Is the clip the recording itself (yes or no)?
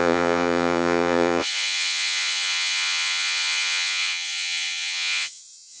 no